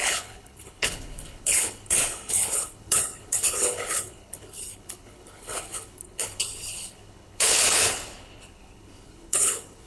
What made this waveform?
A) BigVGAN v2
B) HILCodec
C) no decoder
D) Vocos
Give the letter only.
B